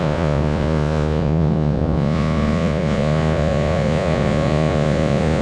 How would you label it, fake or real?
fake